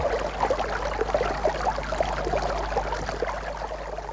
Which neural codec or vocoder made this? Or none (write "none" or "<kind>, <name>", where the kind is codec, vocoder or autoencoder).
none